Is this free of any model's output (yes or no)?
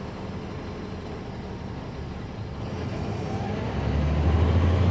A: yes